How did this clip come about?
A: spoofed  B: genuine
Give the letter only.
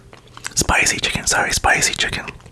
B